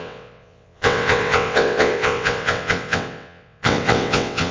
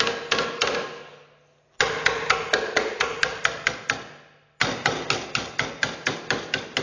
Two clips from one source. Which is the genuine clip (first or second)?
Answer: second